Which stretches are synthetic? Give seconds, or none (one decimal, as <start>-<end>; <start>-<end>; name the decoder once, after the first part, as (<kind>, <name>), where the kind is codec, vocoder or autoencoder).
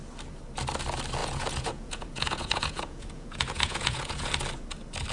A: 1.2-4.3 (vocoder, Vocos)